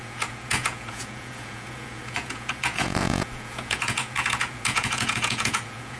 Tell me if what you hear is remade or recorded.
remade